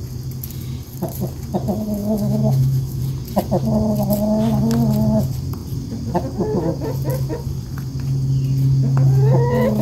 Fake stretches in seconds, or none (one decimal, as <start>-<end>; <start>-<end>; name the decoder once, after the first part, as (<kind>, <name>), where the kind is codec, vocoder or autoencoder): 2.0-3.0 (autoencoder, DAC-VAE)